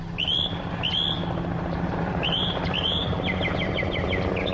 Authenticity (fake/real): real